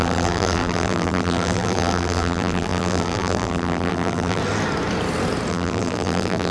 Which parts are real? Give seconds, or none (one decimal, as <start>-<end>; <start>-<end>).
4.4-5.5